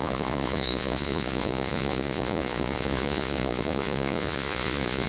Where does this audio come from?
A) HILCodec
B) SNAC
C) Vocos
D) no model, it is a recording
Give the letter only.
C